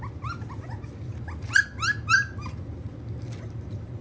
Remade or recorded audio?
recorded